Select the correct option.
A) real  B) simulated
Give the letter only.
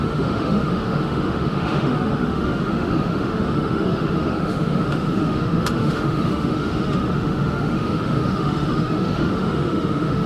B